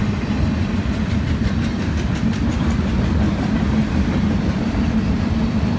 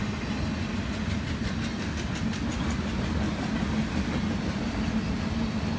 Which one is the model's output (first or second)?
first